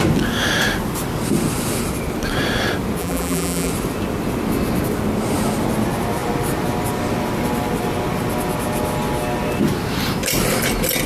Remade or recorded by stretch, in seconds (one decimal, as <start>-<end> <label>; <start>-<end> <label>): 0.0-3.0 recorded; 3.0-3.7 remade; 3.7-11.1 recorded